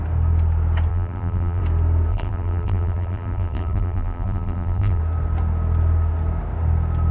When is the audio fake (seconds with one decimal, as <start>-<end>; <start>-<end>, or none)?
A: 0.9-1.6; 2.1-5.0

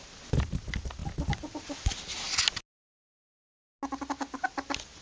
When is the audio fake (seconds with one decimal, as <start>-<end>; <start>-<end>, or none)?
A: none

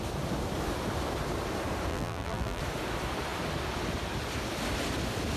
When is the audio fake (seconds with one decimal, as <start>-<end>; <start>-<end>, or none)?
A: 1.9-2.6

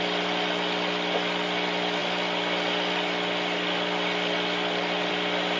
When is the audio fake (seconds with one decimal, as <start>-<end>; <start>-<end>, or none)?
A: none

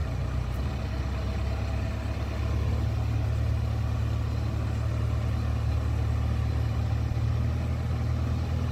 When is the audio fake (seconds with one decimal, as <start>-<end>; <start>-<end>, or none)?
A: 0.0-0.7

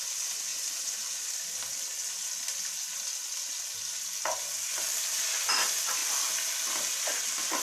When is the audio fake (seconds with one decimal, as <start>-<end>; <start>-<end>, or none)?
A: 0.5-1.2